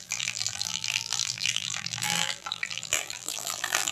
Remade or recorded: remade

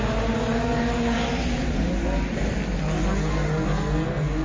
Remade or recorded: recorded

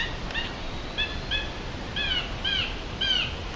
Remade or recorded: recorded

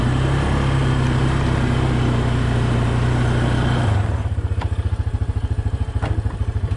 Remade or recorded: remade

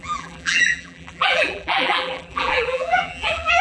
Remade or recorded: remade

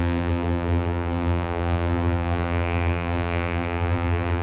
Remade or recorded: remade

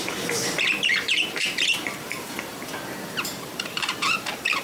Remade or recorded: remade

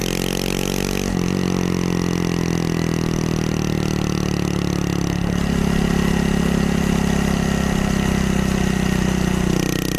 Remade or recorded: recorded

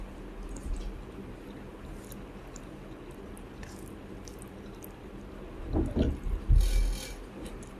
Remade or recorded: recorded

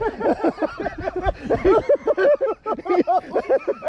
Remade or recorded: recorded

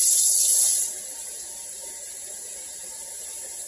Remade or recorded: remade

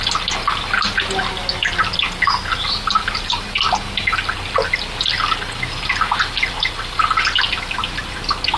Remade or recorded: recorded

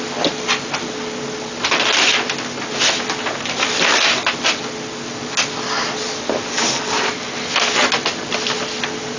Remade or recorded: recorded